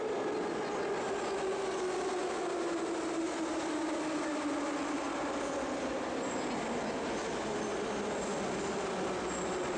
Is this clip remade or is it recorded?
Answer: recorded